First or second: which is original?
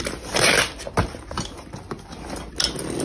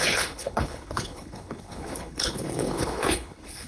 first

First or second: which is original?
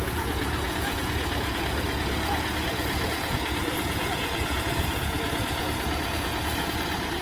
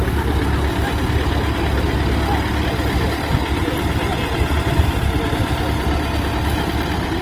second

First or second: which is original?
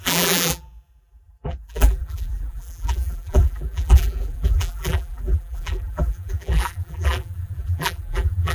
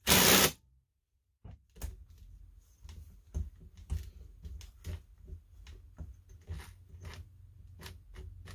second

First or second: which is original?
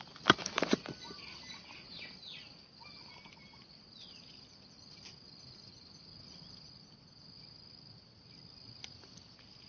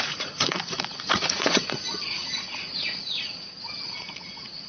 first